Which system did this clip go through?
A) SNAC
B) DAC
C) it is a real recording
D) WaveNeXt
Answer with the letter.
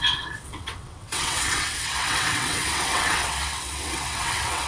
D